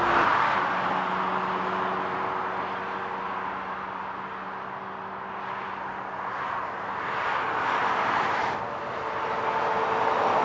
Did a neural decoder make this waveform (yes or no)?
no